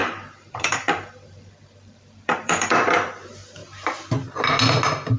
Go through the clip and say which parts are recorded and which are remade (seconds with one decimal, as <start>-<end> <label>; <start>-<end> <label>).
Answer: 0.0-3.1 remade; 3.1-5.2 recorded